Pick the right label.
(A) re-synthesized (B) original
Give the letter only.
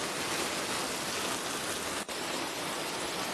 B